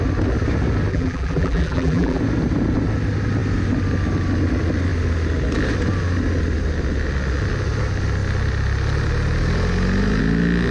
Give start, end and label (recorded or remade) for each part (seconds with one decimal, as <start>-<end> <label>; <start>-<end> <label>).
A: 0.0-0.9 recorded; 0.9-2.2 remade; 2.2-10.7 recorded